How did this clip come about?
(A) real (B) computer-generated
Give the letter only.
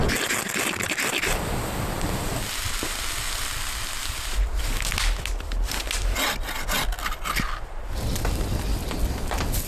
A